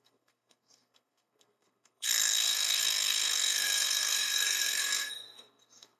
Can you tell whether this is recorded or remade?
remade